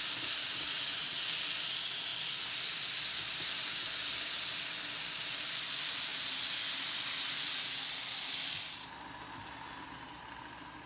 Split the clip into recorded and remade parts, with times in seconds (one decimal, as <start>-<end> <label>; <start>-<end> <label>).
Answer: 0.0-0.4 recorded; 0.4-1.2 remade; 1.2-10.9 recorded